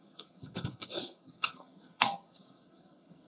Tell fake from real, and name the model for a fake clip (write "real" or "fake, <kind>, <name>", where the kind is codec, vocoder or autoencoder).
fake, codec, SNAC